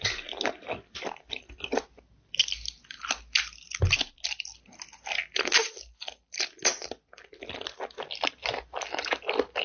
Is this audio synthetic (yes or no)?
no